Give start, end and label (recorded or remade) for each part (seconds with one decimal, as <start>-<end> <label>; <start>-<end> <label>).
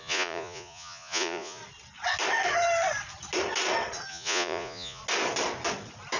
0.0-1.6 remade; 1.6-4.1 recorded; 4.1-5.0 remade; 5.0-6.2 recorded